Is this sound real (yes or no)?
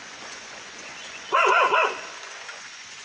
no